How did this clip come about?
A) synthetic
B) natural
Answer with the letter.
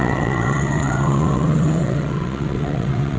A